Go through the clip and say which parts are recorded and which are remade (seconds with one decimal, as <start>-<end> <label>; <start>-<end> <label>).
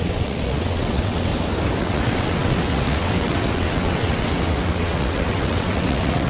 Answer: 0.0-1.3 remade; 1.3-1.8 recorded; 1.8-6.3 remade